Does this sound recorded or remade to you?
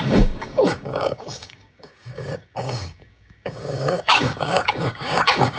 remade